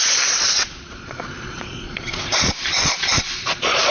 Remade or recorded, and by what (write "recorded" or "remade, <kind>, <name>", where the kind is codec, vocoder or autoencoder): remade, vocoder, Vocos